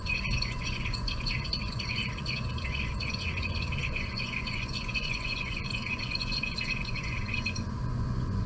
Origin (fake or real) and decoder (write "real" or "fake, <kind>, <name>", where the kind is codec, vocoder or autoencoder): fake, vocoder, Vocos